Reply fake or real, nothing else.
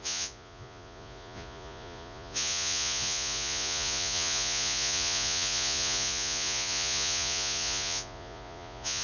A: fake